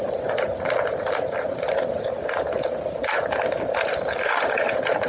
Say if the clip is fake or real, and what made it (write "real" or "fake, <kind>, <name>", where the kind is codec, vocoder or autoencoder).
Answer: real